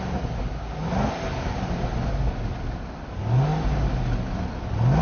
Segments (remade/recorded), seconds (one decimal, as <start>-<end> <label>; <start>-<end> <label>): 0.0-5.0 recorded